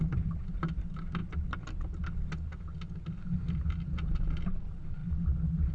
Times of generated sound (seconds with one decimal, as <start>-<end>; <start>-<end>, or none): none